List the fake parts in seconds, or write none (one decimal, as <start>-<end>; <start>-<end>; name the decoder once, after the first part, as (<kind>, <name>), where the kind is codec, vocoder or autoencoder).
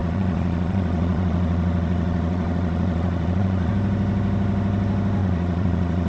0.0-3.7 (vocoder, Vocos); 5.2-6.1